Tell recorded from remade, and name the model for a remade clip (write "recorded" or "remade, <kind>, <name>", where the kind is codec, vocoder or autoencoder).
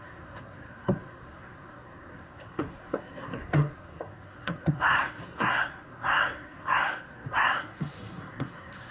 remade, codec, SNAC